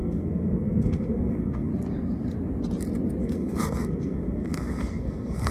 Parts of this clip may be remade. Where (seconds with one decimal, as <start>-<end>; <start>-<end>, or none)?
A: 0.0-1.7; 3.2-5.5